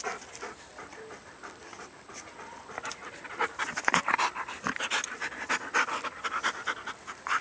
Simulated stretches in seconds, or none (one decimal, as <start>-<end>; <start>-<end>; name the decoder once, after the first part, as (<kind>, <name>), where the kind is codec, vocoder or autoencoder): 0.7-2.1 (vocoder, BigVGAN v2)